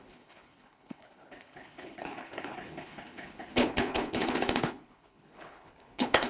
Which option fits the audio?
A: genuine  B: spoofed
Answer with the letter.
B